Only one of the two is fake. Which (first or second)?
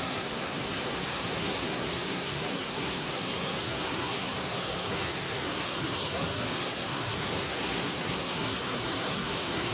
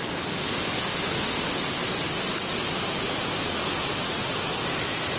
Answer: first